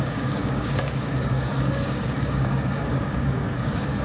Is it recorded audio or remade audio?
remade